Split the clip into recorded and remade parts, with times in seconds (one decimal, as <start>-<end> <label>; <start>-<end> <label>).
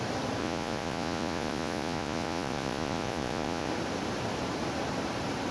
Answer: 0.0-0.4 recorded; 0.4-3.7 remade; 3.7-5.5 recorded